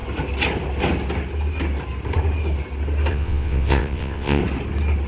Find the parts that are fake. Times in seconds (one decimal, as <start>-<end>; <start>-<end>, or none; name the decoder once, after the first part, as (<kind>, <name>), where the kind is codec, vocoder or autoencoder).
3.1-4.4 (vocoder, WaveNeXt)